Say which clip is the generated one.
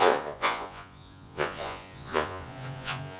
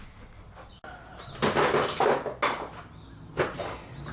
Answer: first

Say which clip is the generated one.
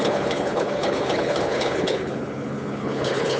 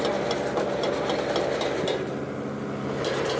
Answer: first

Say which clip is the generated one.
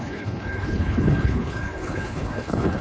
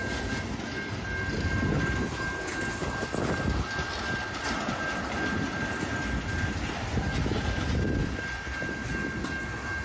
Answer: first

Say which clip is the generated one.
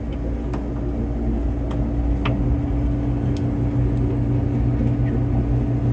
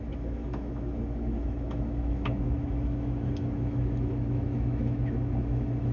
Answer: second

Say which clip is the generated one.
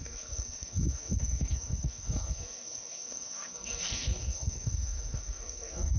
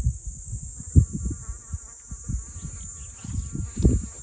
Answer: first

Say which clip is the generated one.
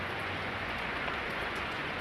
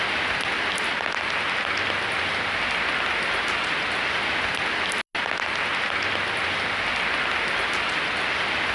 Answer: first